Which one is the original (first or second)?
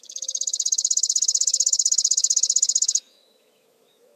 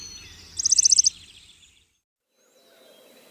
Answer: second